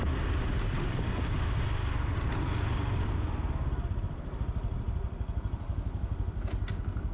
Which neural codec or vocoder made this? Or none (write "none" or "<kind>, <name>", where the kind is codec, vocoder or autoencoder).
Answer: none